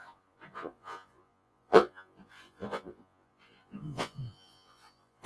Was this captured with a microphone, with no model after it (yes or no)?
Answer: no